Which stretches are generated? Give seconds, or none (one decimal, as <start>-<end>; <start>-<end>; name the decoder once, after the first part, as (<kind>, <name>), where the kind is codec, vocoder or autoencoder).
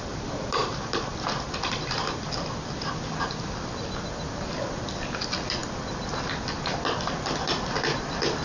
none